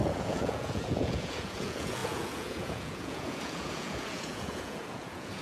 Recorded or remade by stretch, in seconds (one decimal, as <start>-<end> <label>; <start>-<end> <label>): 0.0-5.4 remade